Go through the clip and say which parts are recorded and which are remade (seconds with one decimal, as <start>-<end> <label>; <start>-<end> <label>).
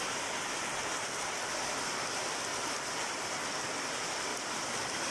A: 0.0-5.1 recorded